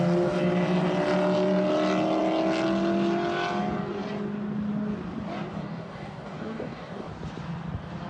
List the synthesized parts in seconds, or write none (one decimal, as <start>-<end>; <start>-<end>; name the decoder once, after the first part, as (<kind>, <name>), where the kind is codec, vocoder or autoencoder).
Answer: 5.5-7.1 (codec, DAC)

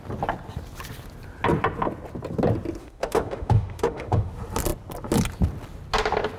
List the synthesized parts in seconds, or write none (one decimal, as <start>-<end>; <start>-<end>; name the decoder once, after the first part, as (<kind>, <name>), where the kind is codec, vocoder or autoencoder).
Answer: 2.8-4.3 (autoencoder, DAC-VAE)

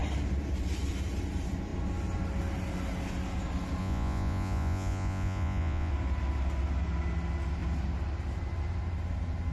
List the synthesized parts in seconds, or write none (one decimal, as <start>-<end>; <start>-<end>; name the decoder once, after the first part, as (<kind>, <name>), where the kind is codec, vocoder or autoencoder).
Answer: 3.8-5.9 (vocoder, Vocos)

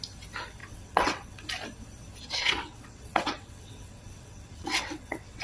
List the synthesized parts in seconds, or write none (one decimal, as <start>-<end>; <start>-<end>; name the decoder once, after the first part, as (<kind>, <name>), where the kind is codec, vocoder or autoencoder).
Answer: 0.6-1.5 (vocoder, WaveNeXt); 2.2-5.4

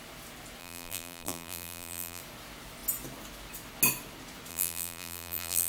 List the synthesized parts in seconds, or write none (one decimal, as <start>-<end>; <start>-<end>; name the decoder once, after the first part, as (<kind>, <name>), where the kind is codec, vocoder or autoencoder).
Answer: 0.6-2.2 (vocoder, BigVGAN v2); 4.5-5.7

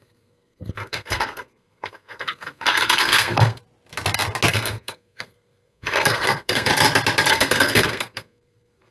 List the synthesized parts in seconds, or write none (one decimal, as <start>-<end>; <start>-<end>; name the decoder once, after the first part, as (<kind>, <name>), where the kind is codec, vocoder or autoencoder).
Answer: 0.0-3.6 (codec, SNAC); 4.5-6.7; 7.3-8.9

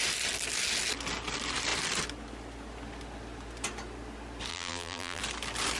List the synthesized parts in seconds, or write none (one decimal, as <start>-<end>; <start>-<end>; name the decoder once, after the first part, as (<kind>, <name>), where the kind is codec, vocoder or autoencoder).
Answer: 4.5-5.2 (vocoder, BigVGAN v2)

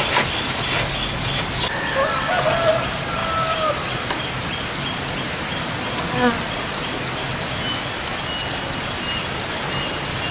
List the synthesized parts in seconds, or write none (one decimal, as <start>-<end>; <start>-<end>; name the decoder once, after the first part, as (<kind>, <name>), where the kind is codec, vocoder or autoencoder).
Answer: none